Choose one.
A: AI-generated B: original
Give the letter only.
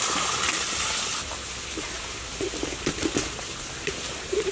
B